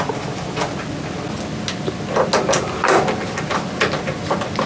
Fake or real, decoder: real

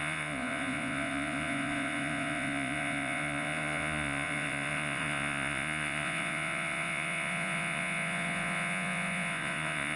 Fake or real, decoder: fake, vocoder, Vocos